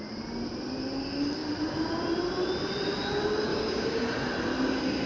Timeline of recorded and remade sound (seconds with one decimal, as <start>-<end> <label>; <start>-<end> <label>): 0.0-3.5 recorded; 3.5-4.0 remade; 4.0-5.1 recorded